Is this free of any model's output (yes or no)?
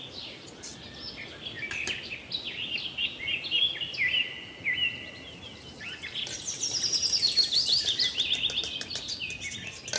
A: yes